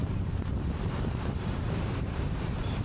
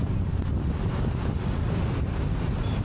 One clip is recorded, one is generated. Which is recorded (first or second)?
second